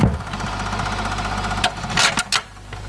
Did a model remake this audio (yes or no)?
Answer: no